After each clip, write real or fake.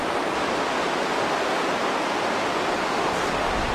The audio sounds real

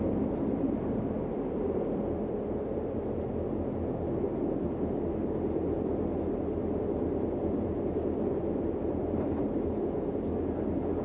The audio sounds real